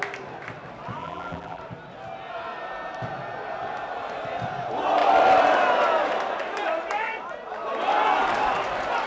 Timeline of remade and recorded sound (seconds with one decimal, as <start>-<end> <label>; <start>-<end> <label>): 0.0-1.0 recorded; 1.0-1.6 remade; 1.6-9.1 recorded